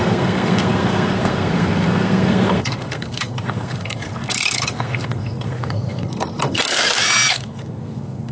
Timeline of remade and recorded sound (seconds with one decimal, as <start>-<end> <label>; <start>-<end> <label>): 0.0-6.8 remade; 6.8-7.3 recorded; 7.3-8.3 remade